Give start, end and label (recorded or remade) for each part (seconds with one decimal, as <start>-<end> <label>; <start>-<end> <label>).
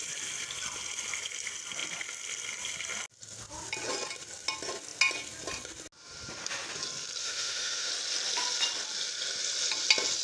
0.0-7.2 recorded; 7.2-7.9 remade; 7.9-10.2 recorded